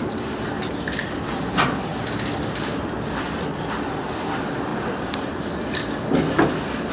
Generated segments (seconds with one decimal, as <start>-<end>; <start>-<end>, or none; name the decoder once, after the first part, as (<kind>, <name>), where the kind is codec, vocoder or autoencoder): none